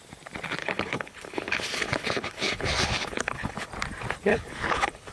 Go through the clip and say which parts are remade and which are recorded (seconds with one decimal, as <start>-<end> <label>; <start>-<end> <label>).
0.0-0.6 recorded; 0.6-3.7 remade; 3.7-4.3 recorded; 4.3-5.1 remade